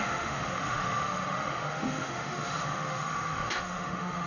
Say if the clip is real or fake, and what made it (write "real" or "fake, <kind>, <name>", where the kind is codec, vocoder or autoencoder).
fake, autoencoder, DAC-VAE